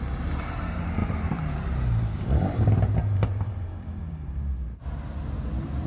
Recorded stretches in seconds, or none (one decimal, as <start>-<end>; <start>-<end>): 0.0-1.0; 4.5-5.9